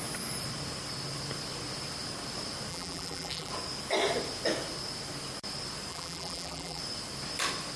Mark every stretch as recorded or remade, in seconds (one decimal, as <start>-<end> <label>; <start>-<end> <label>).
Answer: 0.0-2.7 recorded; 2.7-3.5 remade; 3.5-5.9 recorded; 5.9-6.8 remade; 6.8-7.8 recorded